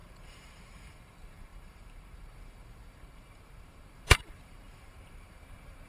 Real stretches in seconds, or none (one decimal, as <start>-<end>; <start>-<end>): none